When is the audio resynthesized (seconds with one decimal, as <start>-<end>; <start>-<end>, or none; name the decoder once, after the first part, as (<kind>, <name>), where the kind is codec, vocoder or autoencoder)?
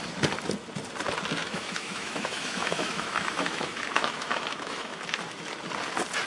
1.4-5.0 (autoencoder, DAC-VAE)